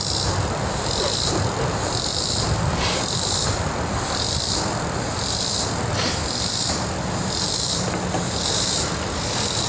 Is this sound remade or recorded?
remade